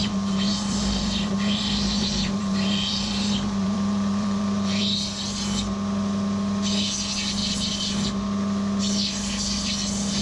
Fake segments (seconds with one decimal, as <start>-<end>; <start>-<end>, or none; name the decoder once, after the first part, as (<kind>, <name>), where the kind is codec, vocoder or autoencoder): 0.0-4.8 (vocoder, BigVGAN v2)